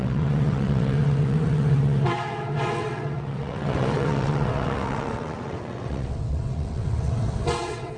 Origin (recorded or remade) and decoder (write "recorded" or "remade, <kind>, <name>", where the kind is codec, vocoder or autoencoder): remade, vocoder, WaveNeXt